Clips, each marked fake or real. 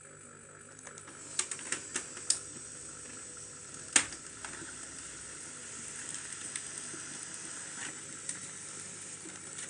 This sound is real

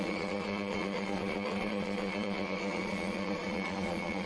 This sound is fake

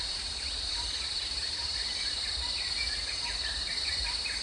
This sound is fake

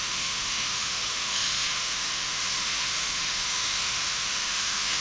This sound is fake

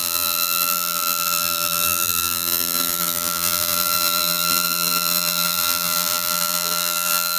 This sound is fake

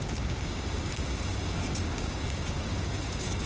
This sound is fake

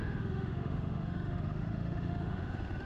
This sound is fake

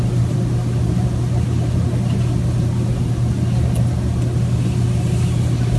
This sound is real